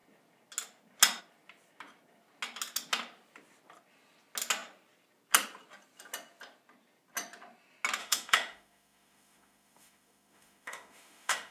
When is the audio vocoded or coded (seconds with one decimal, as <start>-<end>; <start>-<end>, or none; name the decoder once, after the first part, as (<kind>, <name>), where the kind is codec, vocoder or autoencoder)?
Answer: 8.0-11.5 (autoencoder, DAC-VAE)